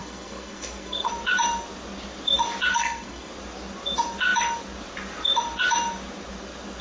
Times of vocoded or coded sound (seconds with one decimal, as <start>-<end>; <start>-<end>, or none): 0.0-1.1; 2.7-3.3